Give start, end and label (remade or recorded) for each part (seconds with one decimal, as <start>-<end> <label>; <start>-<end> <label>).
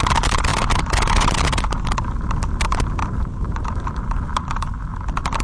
0.0-0.5 recorded; 0.5-2.1 remade; 2.1-3.0 recorded; 3.0-4.0 remade; 4.0-5.4 recorded